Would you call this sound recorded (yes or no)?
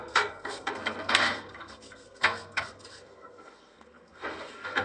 no